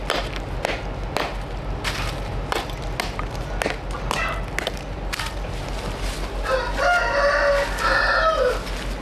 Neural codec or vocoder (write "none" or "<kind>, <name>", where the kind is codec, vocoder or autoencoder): none